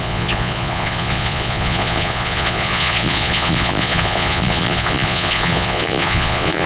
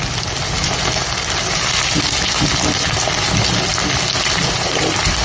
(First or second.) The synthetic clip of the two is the first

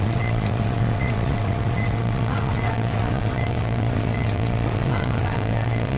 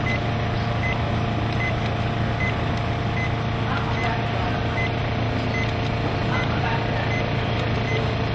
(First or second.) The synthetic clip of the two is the first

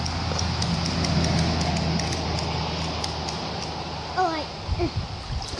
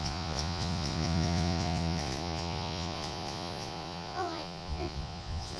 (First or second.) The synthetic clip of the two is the second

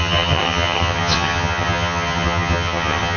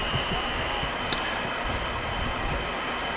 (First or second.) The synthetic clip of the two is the first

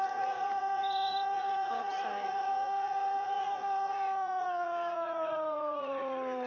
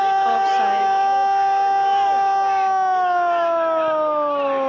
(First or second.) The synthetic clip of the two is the first